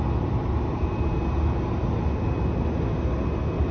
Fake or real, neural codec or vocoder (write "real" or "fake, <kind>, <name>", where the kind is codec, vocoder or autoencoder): real